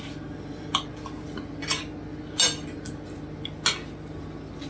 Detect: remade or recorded recorded